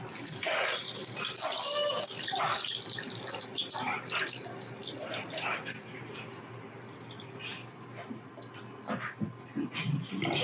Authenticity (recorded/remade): recorded